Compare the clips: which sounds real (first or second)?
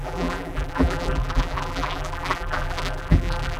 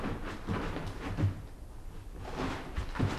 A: second